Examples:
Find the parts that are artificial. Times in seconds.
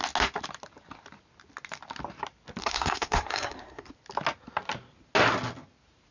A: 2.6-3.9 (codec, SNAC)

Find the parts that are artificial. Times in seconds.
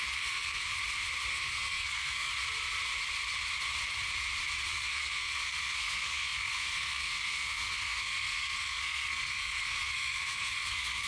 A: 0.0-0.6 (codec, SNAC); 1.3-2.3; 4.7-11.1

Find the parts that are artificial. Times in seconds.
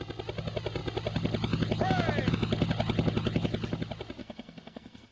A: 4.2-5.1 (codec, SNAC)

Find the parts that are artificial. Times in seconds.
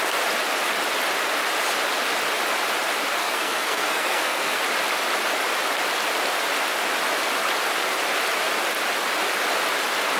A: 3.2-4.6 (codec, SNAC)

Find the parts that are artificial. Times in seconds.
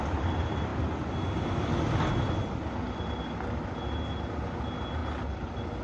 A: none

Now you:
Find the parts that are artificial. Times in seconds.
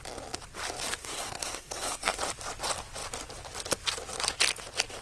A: 1.0-2.2 (codec, SNAC)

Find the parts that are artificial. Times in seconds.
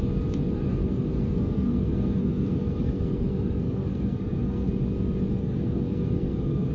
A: 0.7-4.7 (codec, SNAC); 5.4-6.7